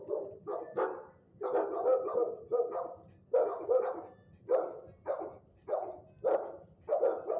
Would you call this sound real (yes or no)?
yes